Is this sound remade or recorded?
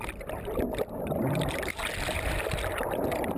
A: remade